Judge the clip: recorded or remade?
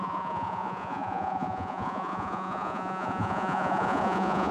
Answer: remade